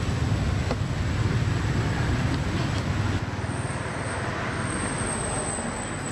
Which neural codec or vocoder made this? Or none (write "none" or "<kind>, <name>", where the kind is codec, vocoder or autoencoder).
none